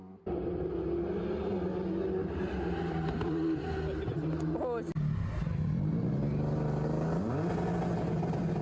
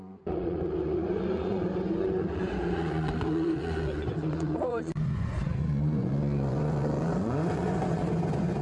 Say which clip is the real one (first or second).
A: first